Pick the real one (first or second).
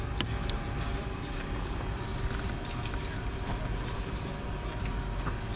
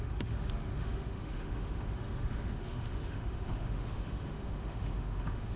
first